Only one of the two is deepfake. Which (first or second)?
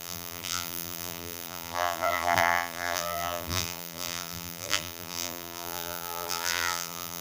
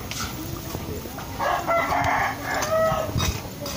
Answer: first